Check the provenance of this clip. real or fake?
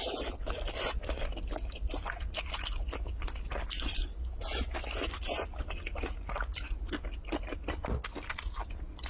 real